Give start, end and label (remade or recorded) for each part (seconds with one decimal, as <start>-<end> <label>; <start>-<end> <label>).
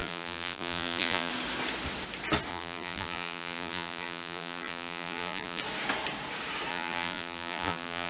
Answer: 0.0-1.3 remade; 1.3-2.5 recorded; 2.5-5.6 remade; 5.6-6.7 recorded; 6.7-8.1 remade